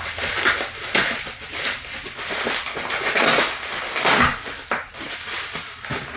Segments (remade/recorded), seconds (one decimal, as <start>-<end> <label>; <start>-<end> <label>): 0.0-4.3 recorded; 4.3-5.1 remade; 5.1-6.2 recorded